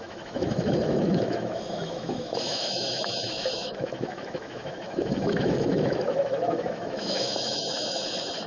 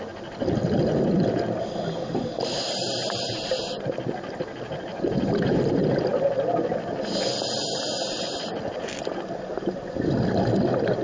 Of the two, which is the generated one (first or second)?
first